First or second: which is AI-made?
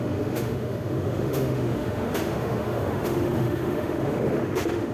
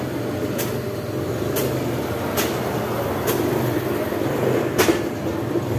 first